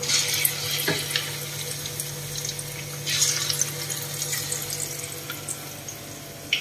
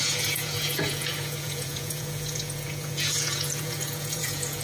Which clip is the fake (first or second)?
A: second